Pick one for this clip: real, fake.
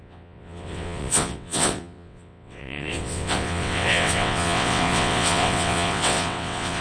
fake